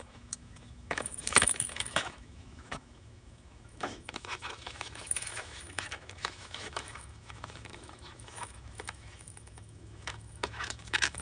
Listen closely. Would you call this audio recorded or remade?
remade